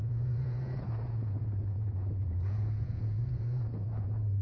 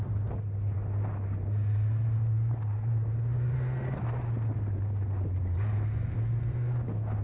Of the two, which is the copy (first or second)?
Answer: first